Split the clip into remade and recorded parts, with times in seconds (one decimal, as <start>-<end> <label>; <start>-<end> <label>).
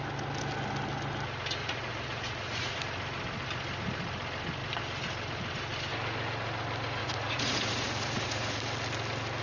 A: 0.0-1.6 recorded; 1.6-2.8 remade; 2.8-7.0 recorded; 7.0-8.6 remade; 8.6-9.4 recorded